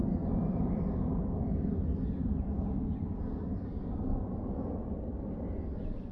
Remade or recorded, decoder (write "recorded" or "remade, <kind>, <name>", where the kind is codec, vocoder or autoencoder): recorded